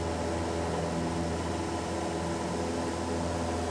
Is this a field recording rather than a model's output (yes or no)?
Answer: yes